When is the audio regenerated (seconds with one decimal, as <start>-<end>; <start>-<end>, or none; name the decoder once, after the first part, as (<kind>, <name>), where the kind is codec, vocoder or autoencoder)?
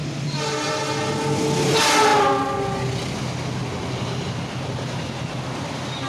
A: none